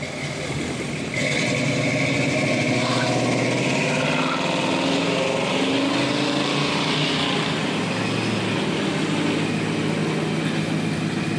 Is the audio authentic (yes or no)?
yes